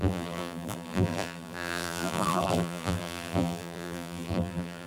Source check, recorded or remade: remade